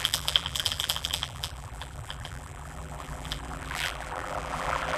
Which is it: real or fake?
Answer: fake